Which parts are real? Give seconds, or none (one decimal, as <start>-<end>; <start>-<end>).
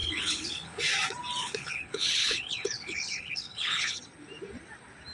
0.8-1.4; 4.0-5.1